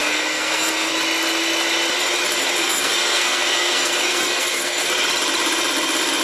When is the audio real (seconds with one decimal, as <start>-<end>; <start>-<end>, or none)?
0.9-2.6; 4.9-6.2